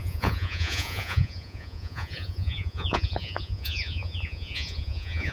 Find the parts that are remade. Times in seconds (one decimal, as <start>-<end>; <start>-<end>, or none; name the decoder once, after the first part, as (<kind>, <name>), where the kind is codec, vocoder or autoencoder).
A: 0.0-5.3 (vocoder, Vocos)